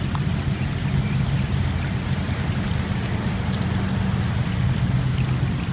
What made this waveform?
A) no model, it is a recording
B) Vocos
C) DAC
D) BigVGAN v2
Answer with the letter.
A